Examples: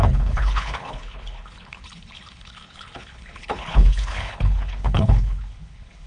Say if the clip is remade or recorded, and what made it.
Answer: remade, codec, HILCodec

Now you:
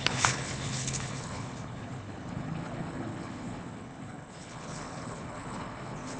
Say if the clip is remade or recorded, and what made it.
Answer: remade, codec, HILCodec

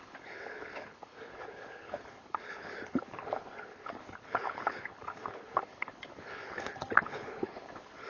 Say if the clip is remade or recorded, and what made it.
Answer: remade, codec, HILCodec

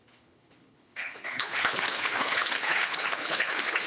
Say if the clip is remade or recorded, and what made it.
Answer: remade, codec, HILCodec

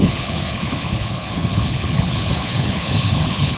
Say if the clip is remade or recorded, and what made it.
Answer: remade, codec, HILCodec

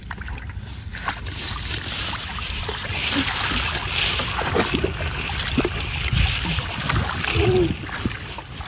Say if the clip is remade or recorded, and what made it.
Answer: recorded